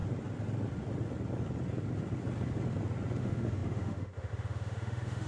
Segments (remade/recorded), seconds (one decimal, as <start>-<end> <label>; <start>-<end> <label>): 0.0-3.2 recorded; 3.2-5.3 remade